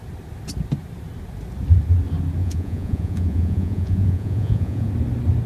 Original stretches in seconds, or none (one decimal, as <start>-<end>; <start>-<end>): 0.0-2.4; 4.9-5.5